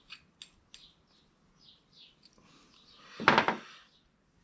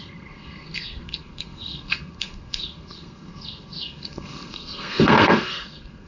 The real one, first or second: first